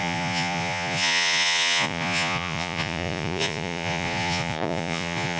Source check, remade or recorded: remade